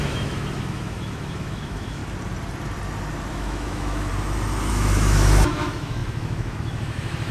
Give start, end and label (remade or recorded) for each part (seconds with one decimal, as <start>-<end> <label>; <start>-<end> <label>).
0.0-2.0 remade; 2.0-3.3 recorded; 3.3-4.1 remade; 4.1-4.7 recorded; 4.7-7.3 remade